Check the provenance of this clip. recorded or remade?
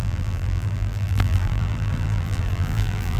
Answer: remade